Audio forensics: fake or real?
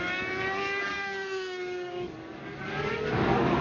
fake